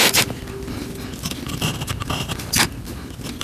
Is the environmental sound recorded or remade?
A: recorded